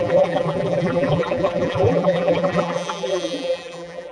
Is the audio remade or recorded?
remade